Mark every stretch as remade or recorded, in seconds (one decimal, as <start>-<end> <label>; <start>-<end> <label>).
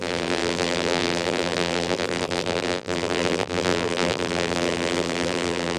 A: 0.0-5.8 remade